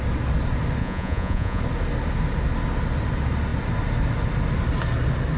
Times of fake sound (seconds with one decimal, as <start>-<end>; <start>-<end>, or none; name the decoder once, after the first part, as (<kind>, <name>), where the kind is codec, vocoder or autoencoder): 0.8-1.6 (vocoder, Vocos)